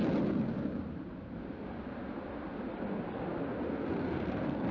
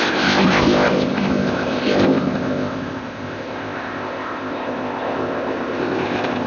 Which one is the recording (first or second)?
first